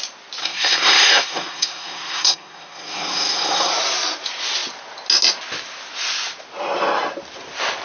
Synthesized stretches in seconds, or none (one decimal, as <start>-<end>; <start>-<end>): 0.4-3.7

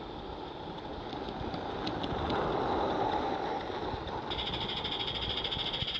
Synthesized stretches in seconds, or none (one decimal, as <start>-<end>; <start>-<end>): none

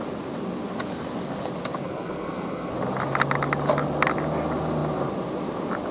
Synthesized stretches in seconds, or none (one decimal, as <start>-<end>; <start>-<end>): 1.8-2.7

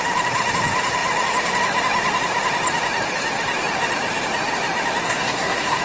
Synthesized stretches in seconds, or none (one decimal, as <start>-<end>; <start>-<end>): 5.0-5.8